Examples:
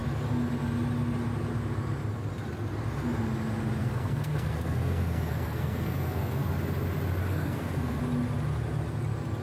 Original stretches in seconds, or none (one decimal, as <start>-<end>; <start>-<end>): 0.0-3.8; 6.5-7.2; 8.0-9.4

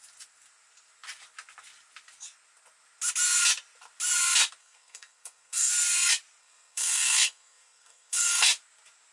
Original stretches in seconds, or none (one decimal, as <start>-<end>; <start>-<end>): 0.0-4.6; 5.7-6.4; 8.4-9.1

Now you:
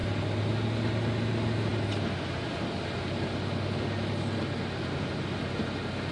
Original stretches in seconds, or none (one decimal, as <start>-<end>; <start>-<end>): 0.0-6.1

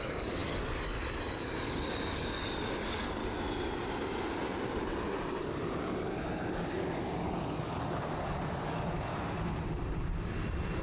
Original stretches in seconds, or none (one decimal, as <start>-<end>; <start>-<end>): 3.2-5.4; 9.1-10.8